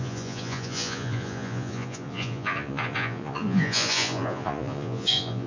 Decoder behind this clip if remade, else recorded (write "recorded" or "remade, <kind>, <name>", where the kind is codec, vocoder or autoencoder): remade, vocoder, Vocos